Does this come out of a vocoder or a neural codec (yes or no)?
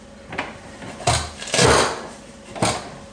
no